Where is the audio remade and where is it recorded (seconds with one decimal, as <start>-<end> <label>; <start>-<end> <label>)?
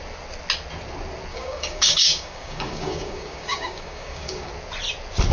0.0-1.3 recorded; 1.3-4.5 remade; 4.5-5.3 recorded